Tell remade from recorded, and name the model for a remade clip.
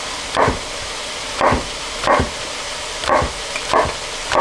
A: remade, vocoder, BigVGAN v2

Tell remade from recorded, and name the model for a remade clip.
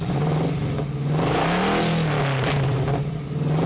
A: recorded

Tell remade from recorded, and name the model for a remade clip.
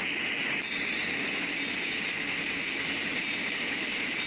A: recorded